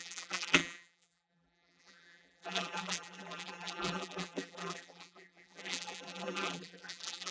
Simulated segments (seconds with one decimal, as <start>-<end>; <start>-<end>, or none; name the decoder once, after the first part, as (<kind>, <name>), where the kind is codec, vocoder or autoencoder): 0.0-7.3 (vocoder, BigVGAN v2)

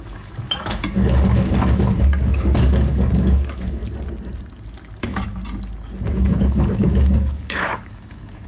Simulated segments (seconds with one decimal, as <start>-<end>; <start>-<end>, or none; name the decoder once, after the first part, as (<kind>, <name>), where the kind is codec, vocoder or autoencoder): 0.0-3.8 (codec, DAC); 5.0-5.4; 6.1-8.5

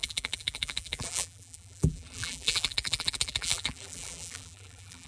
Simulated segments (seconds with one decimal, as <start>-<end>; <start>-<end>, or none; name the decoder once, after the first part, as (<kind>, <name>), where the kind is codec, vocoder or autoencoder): 0.0-5.1 (vocoder, BigVGAN v2)

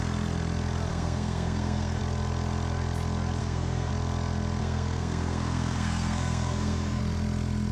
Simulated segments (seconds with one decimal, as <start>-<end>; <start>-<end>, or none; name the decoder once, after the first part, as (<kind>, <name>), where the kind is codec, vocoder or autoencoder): 0.9-2.0 (codec, SNAC); 3.4-3.9; 4.6-7.0

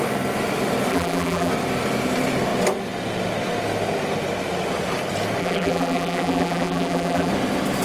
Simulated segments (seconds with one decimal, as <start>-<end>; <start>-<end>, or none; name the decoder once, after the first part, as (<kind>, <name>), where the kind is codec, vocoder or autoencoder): 0.9-1.5 (vocoder, BigVGAN v2); 5.4-7.3

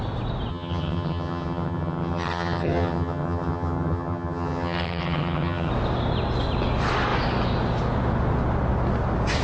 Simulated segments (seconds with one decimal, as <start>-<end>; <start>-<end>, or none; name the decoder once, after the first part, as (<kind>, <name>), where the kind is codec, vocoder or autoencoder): 0.5-5.7 (vocoder, HiFi-GAN)

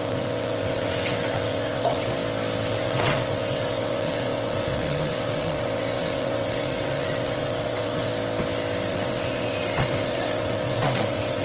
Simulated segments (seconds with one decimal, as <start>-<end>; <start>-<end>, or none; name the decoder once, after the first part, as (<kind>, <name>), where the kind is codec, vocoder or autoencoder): 0.0-2.2 (vocoder, WaveNeXt); 2.7-8.1; 8.9-11.4

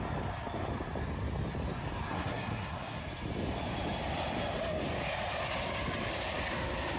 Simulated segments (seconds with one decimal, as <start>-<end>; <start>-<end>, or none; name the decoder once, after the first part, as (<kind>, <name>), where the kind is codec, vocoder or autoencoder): 2.1-3.0 (codec, SNAC)